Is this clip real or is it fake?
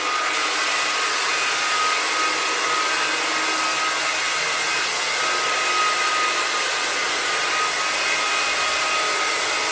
real